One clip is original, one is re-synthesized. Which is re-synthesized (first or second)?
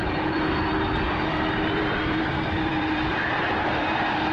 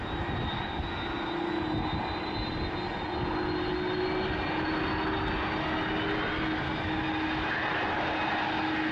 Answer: first